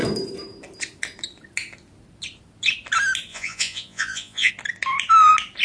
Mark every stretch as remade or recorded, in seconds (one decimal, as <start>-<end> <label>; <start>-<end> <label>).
0.0-3.3 recorded; 3.3-4.5 remade; 4.5-5.6 recorded